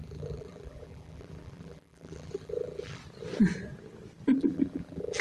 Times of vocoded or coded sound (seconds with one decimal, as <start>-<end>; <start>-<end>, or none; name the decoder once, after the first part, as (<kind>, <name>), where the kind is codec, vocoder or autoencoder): 0.0-3.0 (vocoder, BigVGAN v2); 4.4-5.2